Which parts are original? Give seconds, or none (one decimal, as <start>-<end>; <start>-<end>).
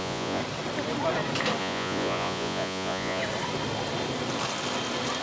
0.4-1.6; 3.2-5.2